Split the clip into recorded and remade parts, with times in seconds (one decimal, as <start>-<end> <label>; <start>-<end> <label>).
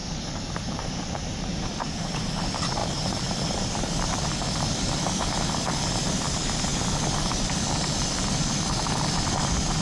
0.0-2.3 remade; 2.3-2.8 recorded; 2.8-3.8 remade; 3.8-9.8 recorded